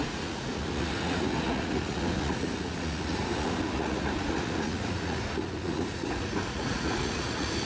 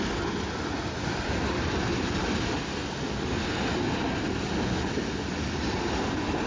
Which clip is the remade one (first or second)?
first